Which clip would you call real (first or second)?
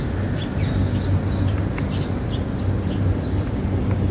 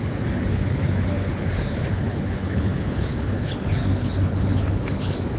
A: first